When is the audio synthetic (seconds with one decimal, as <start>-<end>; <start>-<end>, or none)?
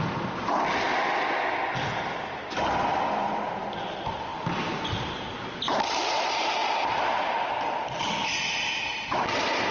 4.3-5.4